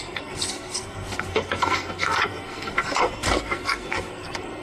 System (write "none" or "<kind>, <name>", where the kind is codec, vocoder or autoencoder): codec, SNAC